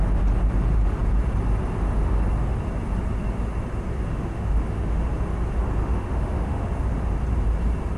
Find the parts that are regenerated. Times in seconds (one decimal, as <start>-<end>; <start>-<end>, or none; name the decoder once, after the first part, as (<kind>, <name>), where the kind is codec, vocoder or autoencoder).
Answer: 4.1-5.1 (autoencoder, DAC-VAE); 5.8-6.7